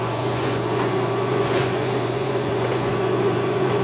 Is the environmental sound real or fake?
fake